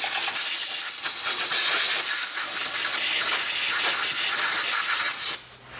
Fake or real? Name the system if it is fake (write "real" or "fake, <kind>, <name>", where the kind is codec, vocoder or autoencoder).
real